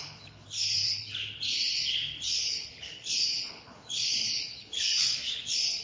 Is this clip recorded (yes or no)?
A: no